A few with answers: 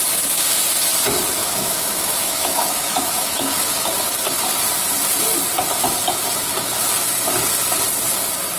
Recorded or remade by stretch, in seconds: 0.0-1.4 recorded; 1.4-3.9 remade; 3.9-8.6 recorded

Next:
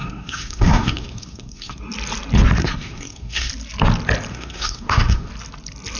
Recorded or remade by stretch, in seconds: 0.0-1.8 remade; 1.8-2.6 recorded; 2.6-3.5 remade; 3.5-4.3 recorded; 4.3-5.3 remade; 5.3-6.0 recorded

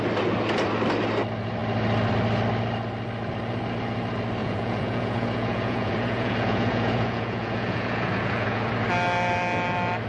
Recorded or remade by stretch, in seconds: 0.0-4.4 recorded; 4.4-8.7 remade; 8.7-10.1 recorded

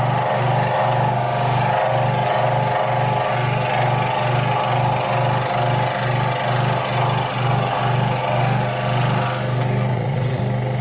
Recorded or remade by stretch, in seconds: 0.0-9.9 recorded; 9.9-10.4 remade; 10.4-10.8 recorded

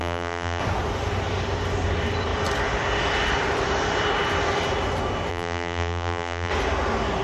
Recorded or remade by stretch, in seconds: 0.0-0.6 remade; 0.6-5.3 recorded; 5.3-6.5 remade; 6.5-7.2 recorded

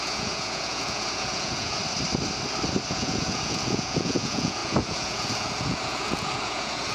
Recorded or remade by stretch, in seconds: 0.0-1.8 remade; 1.8-2.9 recorded; 2.9-6.9 remade